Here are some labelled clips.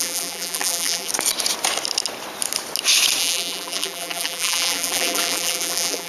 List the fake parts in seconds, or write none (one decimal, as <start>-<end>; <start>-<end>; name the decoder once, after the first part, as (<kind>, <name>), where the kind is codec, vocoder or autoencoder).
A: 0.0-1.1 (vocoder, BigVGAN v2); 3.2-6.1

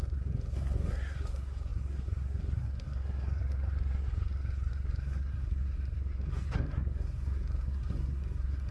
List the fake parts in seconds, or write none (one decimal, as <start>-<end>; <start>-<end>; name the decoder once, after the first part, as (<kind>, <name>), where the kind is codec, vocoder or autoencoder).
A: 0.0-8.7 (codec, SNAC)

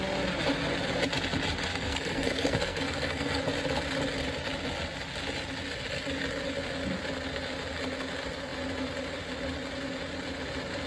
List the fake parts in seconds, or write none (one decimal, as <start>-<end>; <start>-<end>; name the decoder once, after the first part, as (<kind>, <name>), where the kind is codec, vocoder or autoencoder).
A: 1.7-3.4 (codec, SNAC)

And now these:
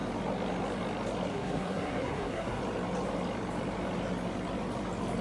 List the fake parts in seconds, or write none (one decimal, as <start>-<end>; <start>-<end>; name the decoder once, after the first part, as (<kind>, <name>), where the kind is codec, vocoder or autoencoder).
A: 1.3-2.6 (codec, SNAC)

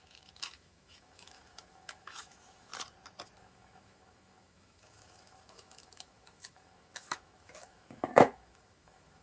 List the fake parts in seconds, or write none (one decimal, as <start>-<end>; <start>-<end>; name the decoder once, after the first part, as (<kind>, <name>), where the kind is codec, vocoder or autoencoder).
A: 0.0-2.7 (autoencoder, DAC-VAE); 3.4-9.2